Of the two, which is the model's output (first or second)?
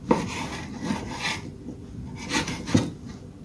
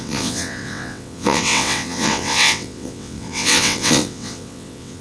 second